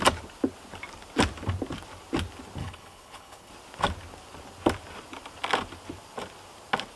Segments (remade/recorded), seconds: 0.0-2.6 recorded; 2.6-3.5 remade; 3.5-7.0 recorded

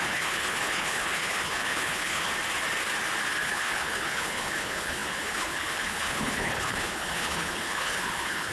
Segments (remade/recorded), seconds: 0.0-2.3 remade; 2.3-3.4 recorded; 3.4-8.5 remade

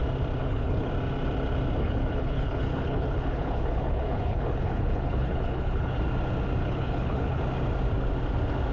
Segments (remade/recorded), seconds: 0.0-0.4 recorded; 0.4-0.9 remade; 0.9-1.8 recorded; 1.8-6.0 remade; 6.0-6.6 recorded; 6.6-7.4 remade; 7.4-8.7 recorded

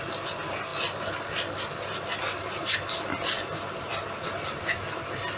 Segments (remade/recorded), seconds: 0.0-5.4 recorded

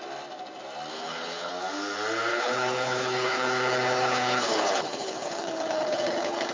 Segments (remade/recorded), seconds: 0.0-0.9 recorded; 0.9-1.5 remade; 1.5-2.3 recorded; 2.3-6.5 remade

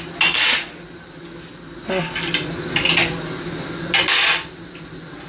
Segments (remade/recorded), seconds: 0.0-5.3 recorded

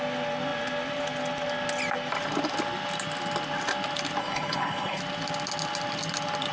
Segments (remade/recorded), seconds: 0.0-4.2 recorded; 4.2-5.0 remade; 5.0-6.5 recorded